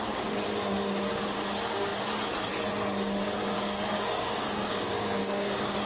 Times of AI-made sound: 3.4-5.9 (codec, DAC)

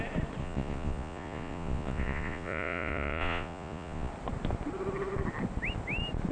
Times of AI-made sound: 0.4-4.1 (vocoder, Vocos)

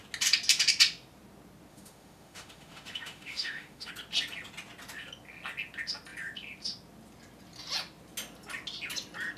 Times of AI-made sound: 1.7-3.9 (autoencoder, DAC-VAE)

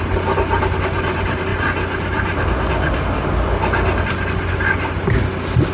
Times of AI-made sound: none

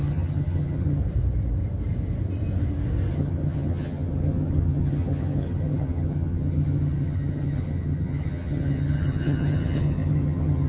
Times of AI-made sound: 0.0-1.0 (vocoder, HiFi-GAN); 3.1-10.7